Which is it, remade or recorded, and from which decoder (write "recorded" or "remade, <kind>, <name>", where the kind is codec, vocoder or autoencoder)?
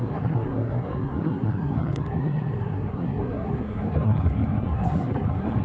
remade, codec, SNAC